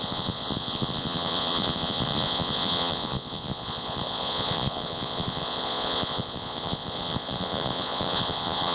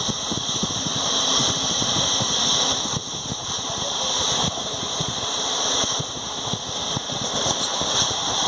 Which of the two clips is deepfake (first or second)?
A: first